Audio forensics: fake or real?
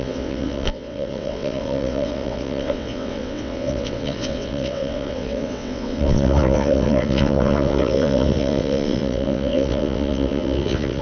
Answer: fake